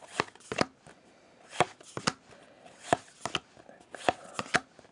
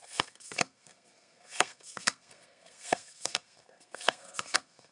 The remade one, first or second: second